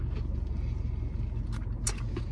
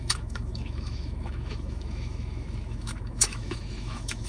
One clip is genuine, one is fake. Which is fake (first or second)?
second